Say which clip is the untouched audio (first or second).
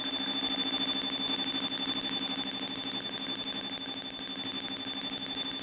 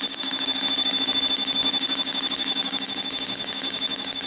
first